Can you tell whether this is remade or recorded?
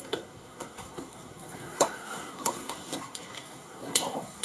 remade